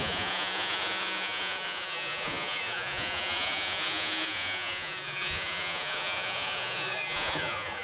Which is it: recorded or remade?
remade